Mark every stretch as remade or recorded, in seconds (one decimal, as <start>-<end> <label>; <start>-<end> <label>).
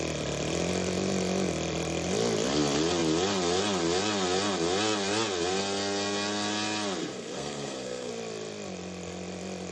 0.0-7.0 recorded; 7.0-8.1 remade; 8.1-9.7 recorded